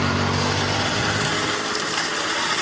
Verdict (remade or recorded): recorded